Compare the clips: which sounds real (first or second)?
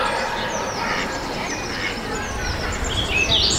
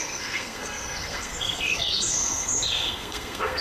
first